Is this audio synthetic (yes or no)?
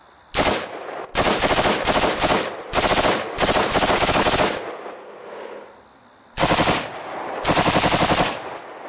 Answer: no